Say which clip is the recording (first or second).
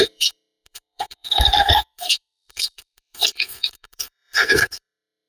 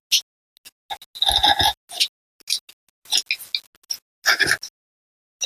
second